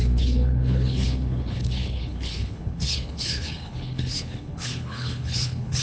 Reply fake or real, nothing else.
fake